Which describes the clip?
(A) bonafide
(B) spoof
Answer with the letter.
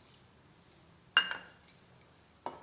A